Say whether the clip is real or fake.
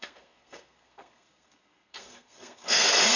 fake